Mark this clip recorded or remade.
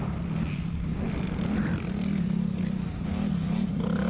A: recorded